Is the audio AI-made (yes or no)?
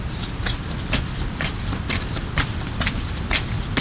no